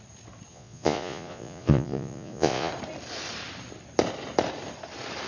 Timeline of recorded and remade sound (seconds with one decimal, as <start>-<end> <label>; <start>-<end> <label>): 0.0-0.5 recorded; 0.5-2.7 remade; 2.7-5.3 recorded